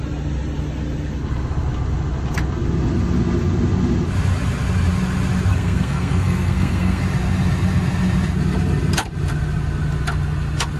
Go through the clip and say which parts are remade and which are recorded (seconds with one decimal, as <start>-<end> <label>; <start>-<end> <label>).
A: 0.0-5.5 recorded; 5.5-7.0 remade; 7.0-10.8 recorded